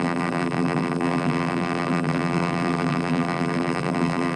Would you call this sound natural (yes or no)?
no